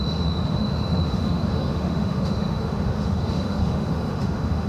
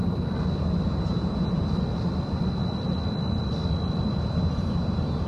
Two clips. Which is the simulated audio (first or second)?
first